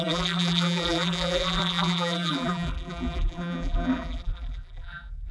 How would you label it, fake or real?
fake